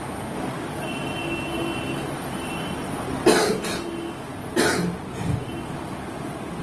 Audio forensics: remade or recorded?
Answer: recorded